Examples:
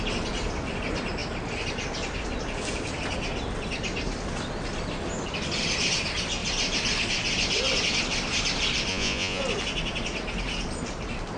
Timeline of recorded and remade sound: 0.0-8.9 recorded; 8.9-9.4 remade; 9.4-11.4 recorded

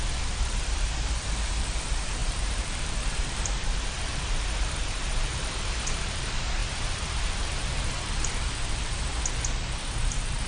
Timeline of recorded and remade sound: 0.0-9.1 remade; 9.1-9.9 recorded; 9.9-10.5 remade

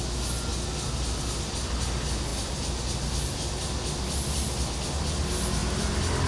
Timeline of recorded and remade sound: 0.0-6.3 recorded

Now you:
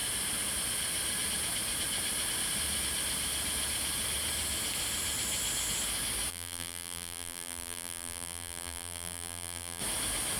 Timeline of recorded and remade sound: 0.0-6.3 recorded; 6.3-9.8 remade; 9.8-10.4 recorded

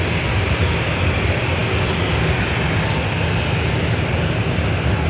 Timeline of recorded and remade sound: 0.0-5.1 recorded